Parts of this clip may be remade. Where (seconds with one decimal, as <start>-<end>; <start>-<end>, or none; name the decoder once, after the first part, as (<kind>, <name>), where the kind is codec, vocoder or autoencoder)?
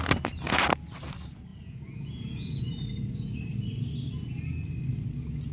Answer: 1.5-2.7 (vocoder, Vocos)